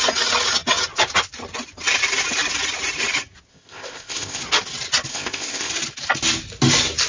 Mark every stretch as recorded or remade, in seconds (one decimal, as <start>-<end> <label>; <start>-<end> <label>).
0.0-3.5 recorded; 3.5-4.4 remade; 4.4-5.1 recorded; 5.1-5.7 remade; 5.7-7.1 recorded